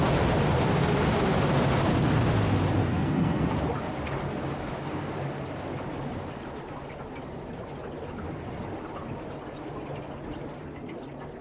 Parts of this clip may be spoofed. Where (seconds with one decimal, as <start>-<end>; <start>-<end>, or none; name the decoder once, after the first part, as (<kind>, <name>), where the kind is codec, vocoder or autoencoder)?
2.8-3.5 (codec, SNAC)